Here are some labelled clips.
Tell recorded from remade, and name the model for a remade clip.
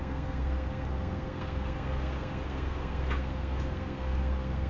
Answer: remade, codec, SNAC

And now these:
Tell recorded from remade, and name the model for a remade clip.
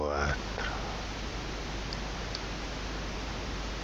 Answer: recorded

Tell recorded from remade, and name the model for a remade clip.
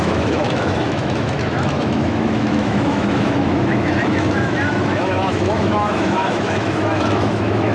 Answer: remade, autoencoder, DAC-VAE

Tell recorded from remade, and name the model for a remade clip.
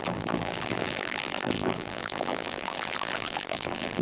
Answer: remade, vocoder, BigVGAN v2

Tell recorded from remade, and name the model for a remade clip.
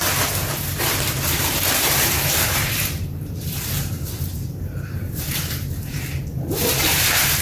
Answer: remade, vocoder, BigVGAN v2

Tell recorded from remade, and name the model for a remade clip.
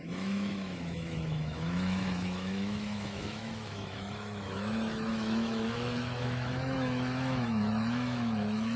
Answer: remade, autoencoder, DAC-VAE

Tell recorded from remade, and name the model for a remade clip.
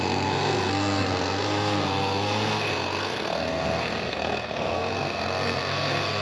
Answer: remade, codec, SNAC